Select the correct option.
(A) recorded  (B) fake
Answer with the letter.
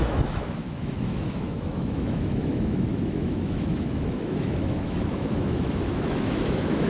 B